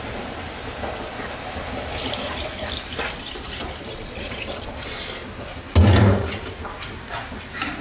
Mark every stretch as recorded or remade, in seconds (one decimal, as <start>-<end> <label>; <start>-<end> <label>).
0.0-3.9 recorded; 3.9-4.7 remade; 4.7-7.8 recorded